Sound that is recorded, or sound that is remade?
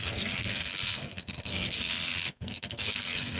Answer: remade